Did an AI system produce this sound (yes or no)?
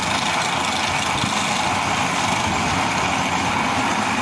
no